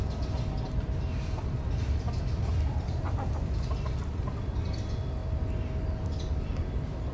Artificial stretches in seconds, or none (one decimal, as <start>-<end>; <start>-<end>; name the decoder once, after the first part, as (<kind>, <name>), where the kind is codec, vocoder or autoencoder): none